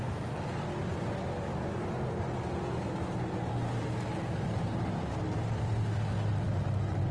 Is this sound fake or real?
real